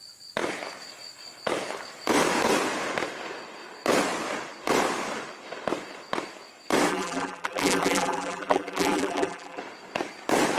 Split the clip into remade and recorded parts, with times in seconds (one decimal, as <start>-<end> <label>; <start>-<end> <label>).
0.0-6.9 recorded; 6.9-9.6 remade; 9.6-10.6 recorded